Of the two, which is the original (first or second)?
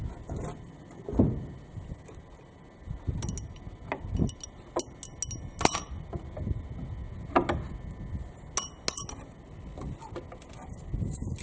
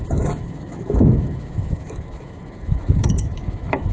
first